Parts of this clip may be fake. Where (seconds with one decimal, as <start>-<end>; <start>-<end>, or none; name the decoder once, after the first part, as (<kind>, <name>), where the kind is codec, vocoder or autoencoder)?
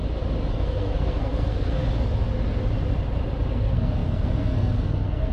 0.5-1.8 (codec, SNAC); 3.5-5.3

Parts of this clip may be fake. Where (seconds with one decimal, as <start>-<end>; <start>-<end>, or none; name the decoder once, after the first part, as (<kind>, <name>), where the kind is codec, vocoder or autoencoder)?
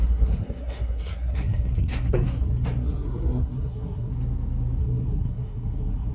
0.0-4.1 (codec, SNAC); 4.8-6.1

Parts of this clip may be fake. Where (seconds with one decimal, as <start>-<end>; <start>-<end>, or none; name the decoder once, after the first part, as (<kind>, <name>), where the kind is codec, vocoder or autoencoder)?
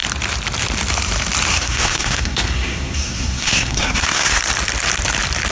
1.5-4.4 (codec, SNAC)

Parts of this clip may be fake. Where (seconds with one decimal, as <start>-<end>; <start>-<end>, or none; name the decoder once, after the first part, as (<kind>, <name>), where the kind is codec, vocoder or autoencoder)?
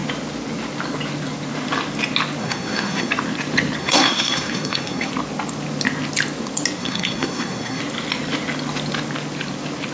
2.4-3.1 (codec, SNAC); 3.8-5.1; 6.8-7.8